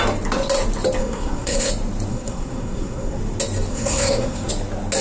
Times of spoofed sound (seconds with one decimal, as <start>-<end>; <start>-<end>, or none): 1.0-1.7; 2.1-3.2; 3.7-4.5

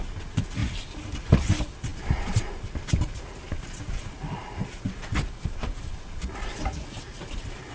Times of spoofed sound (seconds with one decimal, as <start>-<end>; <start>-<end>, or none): none

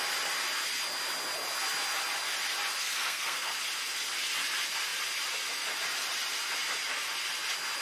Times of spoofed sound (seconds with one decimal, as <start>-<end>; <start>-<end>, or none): 2.8-3.5

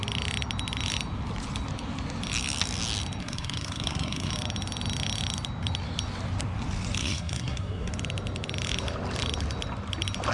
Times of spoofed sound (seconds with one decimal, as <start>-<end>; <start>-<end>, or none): 3.2-4.3; 7.0-7.9